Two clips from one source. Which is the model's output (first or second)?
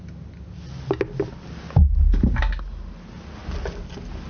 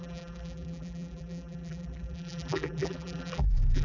second